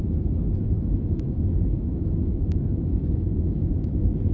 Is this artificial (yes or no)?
yes